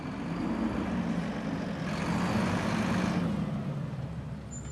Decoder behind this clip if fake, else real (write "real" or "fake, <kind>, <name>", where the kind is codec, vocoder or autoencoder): real